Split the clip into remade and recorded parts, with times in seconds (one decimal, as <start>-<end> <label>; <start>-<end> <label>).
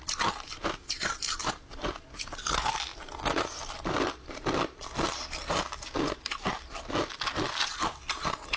0.0-8.6 recorded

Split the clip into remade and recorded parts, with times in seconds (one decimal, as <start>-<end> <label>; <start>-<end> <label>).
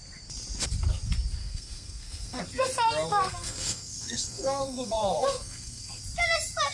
0.0-1.4 recorded; 1.4-2.4 remade; 2.4-3.1 recorded; 3.1-6.0 remade; 6.0-6.7 recorded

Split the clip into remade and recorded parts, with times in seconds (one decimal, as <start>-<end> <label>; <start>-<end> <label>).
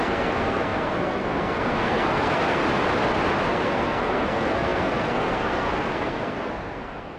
0.0-2.6 remade; 2.6-3.5 recorded; 3.5-7.2 remade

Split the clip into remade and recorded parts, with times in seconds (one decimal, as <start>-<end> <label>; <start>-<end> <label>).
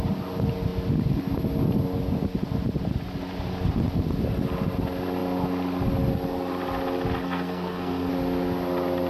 0.0-7.2 recorded; 7.2-8.1 remade; 8.1-9.1 recorded